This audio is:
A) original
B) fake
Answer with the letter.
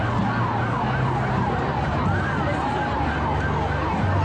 A